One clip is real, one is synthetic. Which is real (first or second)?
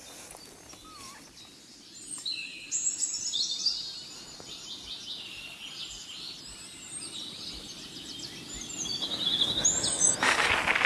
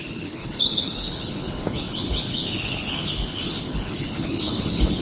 first